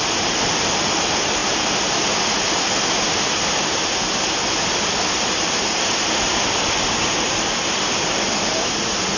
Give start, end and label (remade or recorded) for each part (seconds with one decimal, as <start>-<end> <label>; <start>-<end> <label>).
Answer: 0.0-9.2 recorded